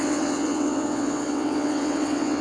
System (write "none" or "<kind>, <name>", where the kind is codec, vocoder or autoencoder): vocoder, WaveNeXt